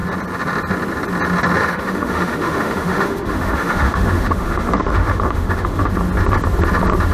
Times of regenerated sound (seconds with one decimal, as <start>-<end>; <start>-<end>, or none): 1.6-5.9